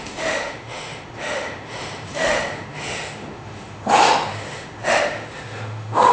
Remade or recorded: remade